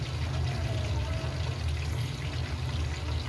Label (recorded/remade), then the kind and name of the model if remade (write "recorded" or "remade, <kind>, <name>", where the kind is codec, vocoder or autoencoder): recorded